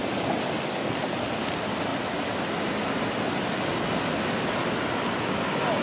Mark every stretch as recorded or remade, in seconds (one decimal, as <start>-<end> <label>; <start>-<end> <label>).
0.0-5.8 recorded